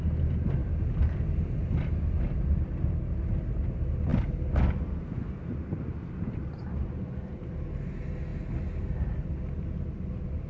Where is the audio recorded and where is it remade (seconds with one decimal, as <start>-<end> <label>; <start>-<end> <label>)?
0.0-10.5 recorded